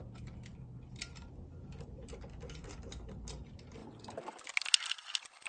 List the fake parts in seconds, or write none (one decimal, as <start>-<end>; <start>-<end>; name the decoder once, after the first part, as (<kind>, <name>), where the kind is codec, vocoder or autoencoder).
none